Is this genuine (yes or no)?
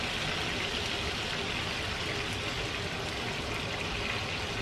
yes